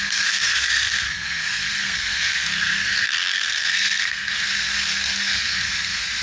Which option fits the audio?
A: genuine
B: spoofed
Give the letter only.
B